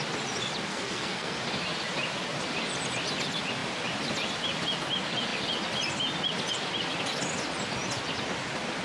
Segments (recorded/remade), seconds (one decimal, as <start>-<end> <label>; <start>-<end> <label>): 0.0-0.7 recorded; 0.7-1.4 remade; 1.4-8.8 recorded